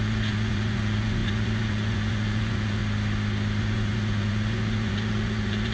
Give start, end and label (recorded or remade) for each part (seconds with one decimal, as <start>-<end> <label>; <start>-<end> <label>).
0.0-2.8 remade; 2.8-3.6 recorded; 3.6-5.7 remade